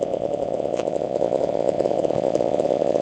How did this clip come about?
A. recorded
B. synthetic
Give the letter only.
B